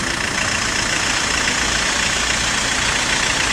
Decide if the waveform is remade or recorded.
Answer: recorded